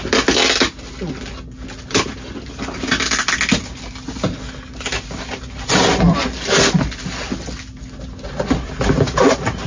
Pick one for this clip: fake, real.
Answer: real